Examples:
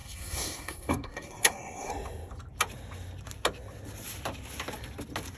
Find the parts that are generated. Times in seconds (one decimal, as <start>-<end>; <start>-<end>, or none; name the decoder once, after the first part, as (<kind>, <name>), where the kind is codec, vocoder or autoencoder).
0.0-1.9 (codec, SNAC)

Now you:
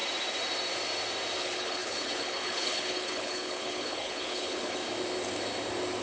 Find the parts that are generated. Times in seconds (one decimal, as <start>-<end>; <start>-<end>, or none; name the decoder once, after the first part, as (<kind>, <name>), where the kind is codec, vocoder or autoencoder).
1.4-4.8 (codec, HILCodec)

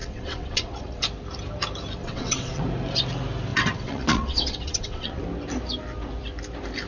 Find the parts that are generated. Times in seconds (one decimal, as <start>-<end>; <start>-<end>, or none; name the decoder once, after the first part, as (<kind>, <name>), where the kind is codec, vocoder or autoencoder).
0.0-1.0 (vocoder, WaveNeXt); 2.0-2.6; 3.5-5.2